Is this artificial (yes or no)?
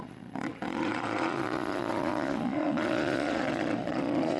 yes